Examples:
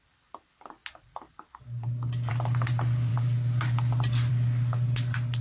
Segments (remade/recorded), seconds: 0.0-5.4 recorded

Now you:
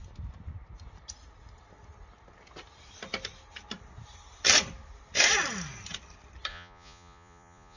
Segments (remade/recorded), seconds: 0.0-6.5 recorded; 6.5-7.8 remade

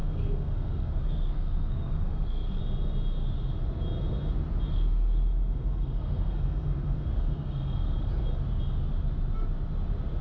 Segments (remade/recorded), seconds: 0.0-2.6 remade; 2.6-4.7 recorded; 4.7-8.1 remade; 8.1-10.2 recorded

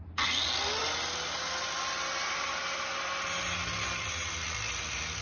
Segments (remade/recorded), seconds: 0.0-5.2 recorded